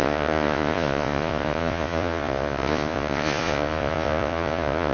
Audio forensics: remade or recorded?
remade